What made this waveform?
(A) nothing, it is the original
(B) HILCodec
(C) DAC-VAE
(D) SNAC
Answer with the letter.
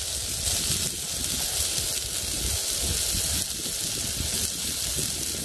A